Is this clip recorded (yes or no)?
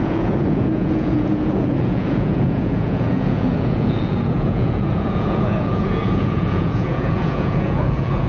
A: no